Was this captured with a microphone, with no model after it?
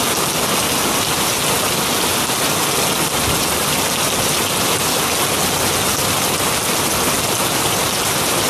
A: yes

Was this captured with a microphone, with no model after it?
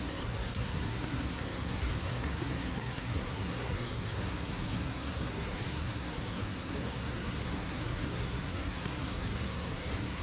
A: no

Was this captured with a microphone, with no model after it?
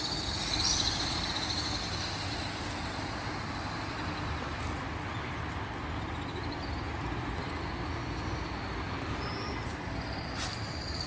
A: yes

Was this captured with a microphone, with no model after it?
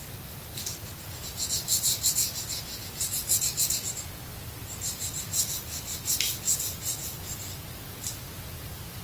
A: yes